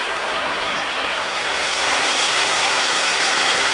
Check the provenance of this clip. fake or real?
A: fake